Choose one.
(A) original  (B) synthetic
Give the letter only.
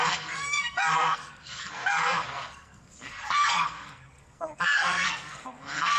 B